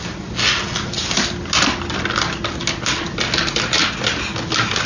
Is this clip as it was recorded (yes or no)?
yes